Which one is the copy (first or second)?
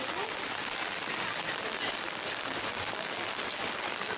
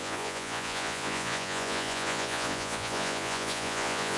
second